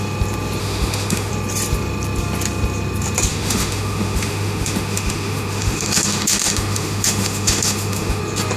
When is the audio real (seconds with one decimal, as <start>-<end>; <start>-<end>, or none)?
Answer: 0.0-0.6; 1.3-3.3; 8.2-8.6